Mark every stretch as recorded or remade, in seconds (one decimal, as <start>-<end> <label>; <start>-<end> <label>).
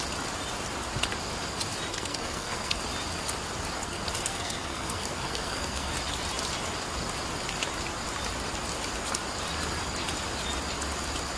0.0-1.9 recorded; 1.9-2.8 remade; 2.8-3.8 recorded; 3.8-5.9 remade; 5.9-11.4 recorded